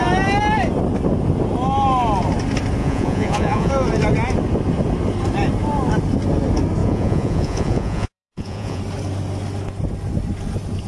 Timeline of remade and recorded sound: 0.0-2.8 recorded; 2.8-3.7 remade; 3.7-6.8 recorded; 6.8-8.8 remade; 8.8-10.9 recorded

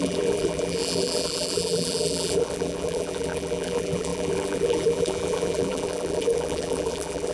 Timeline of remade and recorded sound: 0.0-7.3 remade

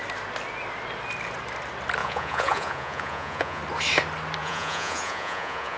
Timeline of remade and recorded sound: 0.0-2.0 recorded; 2.0-3.6 remade; 3.6-4.4 recorded; 4.4-5.8 remade

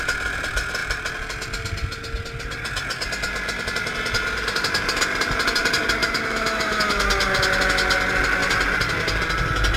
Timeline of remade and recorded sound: 0.0-6.0 recorded; 6.0-7.1 remade; 7.1-9.8 recorded

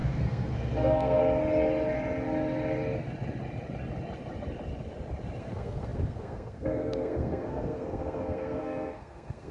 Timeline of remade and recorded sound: 0.0-1.2 remade; 1.2-5.4 recorded; 5.4-9.5 remade

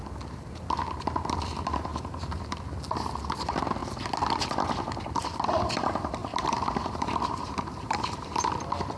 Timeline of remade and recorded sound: 0.0-1.9 recorded; 1.9-2.6 remade; 2.6-6.2 recorded; 6.2-8.5 remade; 8.5-9.0 recorded

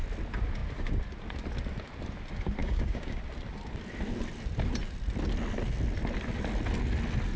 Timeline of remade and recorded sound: 0.0-2.6 recorded; 2.6-3.2 remade; 3.2-7.4 recorded